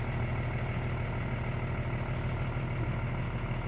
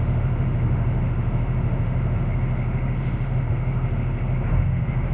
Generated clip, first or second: second